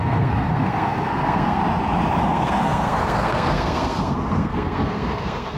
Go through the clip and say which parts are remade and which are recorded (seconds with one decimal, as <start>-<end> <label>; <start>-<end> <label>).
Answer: 0.0-1.6 remade; 1.6-2.2 recorded; 2.2-5.6 remade